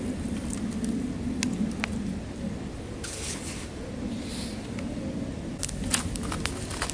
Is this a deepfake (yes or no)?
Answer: no